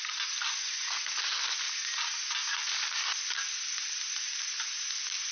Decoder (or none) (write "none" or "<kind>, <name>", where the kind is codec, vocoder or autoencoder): none